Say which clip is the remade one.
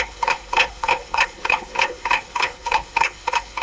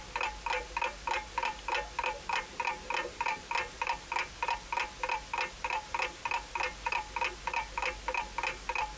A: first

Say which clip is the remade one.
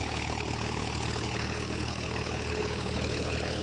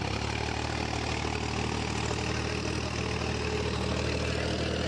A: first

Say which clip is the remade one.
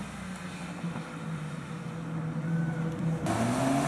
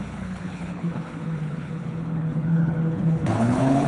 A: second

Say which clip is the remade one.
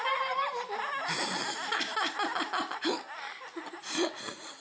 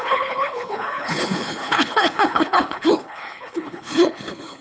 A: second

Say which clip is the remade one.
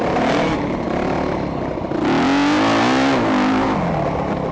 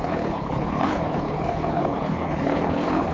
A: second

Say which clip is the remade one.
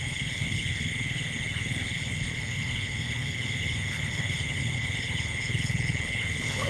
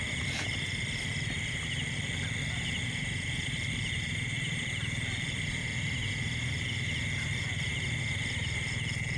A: first